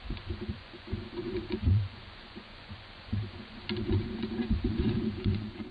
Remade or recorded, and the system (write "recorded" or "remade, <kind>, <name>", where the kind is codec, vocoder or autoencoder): remade, vocoder, Vocos